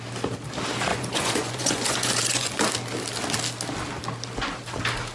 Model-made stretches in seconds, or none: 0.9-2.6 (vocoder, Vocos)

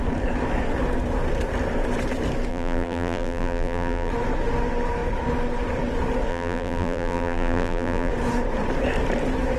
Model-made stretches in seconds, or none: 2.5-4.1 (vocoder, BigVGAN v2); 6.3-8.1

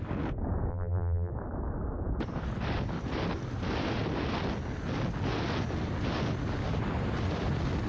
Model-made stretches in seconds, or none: 0.7-1.3 (vocoder, BigVGAN v2)

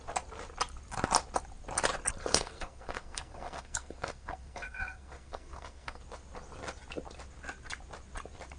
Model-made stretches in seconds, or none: 2.3-6.0 (codec, SNAC)